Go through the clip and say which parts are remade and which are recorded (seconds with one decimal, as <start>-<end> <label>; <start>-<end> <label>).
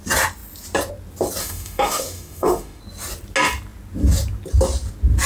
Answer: 0.0-1.4 recorded; 1.4-2.8 remade; 2.8-5.3 recorded